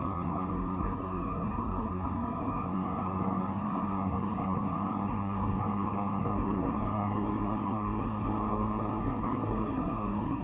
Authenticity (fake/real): fake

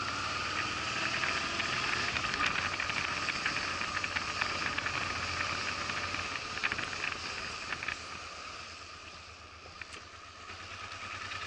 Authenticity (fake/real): real